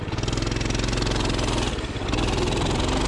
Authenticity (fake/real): real